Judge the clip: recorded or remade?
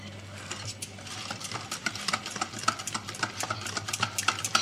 recorded